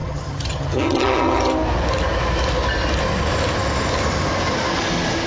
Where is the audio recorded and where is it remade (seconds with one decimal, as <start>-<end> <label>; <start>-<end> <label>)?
0.0-1.5 remade; 1.5-5.3 recorded